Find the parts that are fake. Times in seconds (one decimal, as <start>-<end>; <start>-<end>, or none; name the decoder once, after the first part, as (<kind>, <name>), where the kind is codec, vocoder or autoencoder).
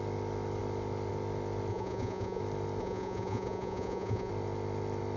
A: 1.7-2.4 (vocoder, Vocos); 2.8-4.3